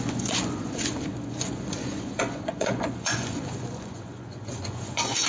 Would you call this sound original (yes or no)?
no